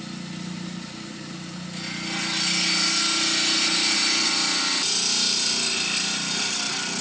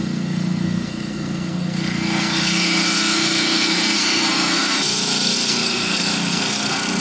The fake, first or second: second